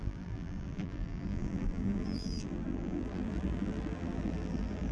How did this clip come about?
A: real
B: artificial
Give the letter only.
B